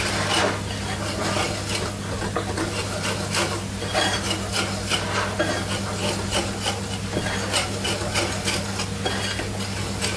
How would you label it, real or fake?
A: real